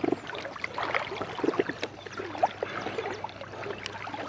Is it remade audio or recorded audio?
recorded